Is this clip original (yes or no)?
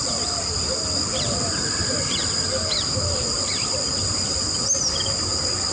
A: yes